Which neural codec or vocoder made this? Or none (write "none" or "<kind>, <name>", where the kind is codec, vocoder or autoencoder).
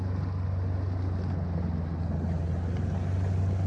none